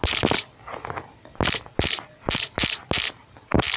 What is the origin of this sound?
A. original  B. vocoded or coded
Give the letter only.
A